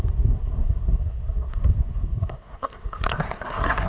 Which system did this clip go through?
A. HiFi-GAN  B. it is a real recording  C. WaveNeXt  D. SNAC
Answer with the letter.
D